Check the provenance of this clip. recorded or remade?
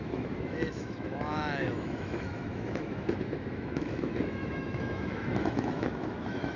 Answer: remade